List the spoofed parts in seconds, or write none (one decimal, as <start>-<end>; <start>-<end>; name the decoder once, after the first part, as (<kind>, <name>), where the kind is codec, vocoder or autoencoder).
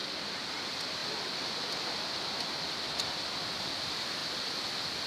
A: none